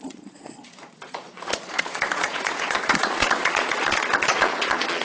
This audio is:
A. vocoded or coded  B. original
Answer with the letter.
A